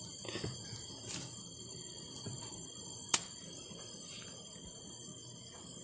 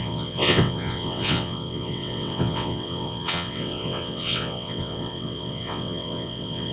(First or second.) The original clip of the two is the first